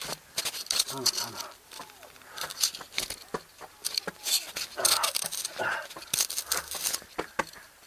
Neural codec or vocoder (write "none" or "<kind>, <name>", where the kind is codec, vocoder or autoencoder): none